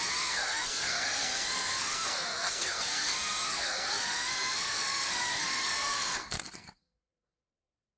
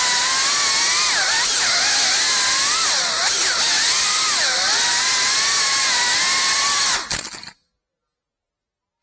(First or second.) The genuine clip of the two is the second